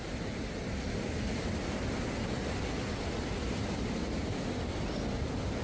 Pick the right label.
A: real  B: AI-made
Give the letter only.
A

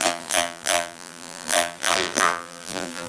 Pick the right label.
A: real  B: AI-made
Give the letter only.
B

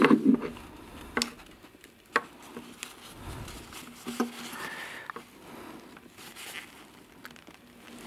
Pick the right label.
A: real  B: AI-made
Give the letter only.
A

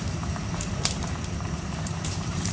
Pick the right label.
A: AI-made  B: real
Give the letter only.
A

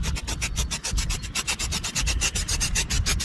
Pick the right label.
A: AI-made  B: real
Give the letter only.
A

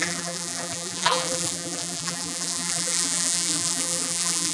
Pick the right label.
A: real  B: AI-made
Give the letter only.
B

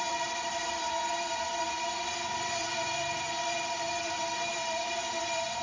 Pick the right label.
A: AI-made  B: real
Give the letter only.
A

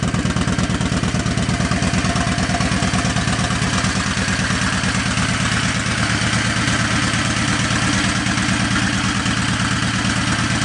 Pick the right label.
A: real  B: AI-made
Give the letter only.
A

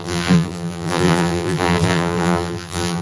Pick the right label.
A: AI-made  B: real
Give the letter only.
A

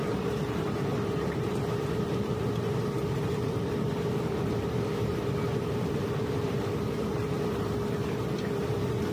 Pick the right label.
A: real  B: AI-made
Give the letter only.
B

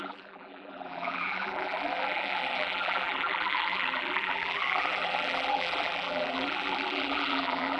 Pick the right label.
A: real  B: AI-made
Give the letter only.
B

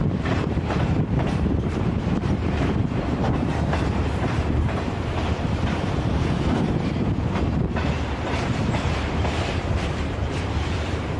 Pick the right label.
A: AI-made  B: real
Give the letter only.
A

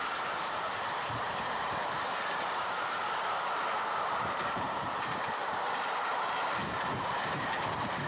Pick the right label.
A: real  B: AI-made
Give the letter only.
B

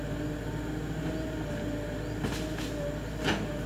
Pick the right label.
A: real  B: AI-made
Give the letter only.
A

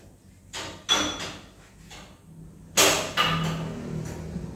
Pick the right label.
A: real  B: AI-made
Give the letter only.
A